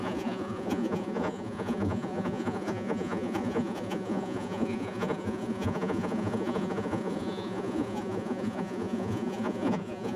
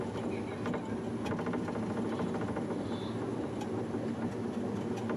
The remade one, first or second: first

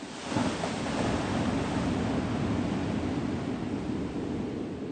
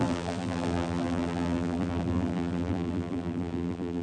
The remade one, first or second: second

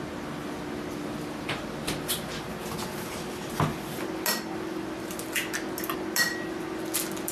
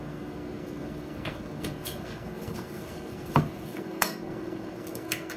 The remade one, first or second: second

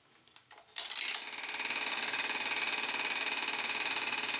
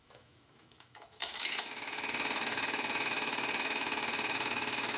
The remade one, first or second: second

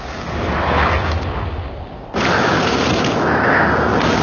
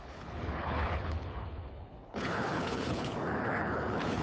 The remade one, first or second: second